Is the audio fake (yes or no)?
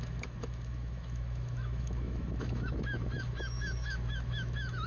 yes